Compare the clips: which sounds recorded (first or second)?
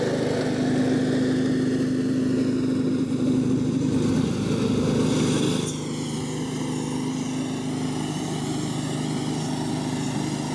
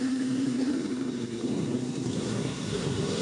first